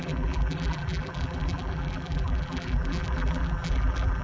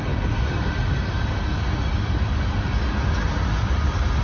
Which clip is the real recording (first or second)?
second